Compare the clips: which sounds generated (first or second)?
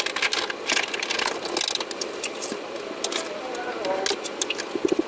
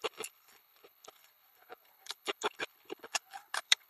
second